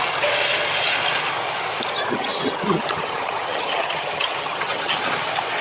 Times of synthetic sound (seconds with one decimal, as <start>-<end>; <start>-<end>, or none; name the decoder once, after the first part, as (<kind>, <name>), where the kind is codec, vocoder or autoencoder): 2.1-5.0 (vocoder, HiFi-GAN)